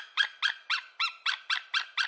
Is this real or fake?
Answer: real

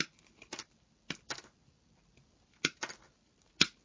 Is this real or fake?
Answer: real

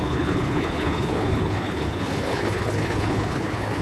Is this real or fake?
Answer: fake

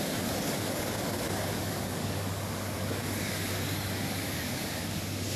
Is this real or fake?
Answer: fake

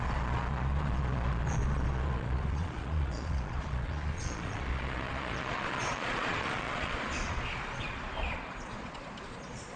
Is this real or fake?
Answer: fake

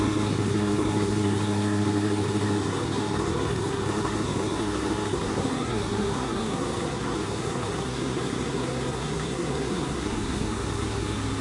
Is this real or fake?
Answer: fake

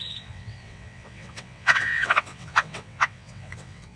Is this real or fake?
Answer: fake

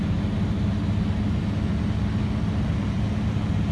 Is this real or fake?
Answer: real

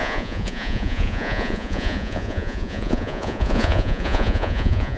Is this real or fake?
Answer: fake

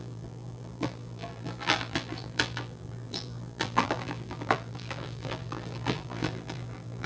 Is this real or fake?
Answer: fake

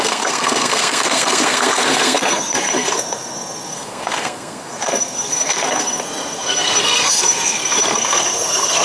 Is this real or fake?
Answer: fake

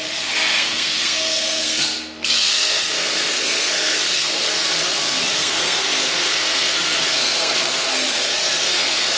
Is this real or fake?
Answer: fake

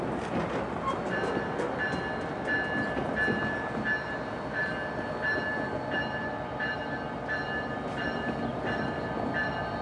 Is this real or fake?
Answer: real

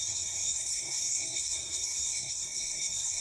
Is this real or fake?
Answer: fake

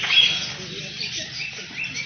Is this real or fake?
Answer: real